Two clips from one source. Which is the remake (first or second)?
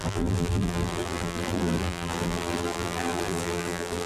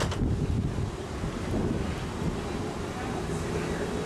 first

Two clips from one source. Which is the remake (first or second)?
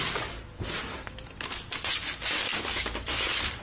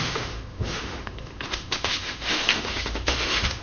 second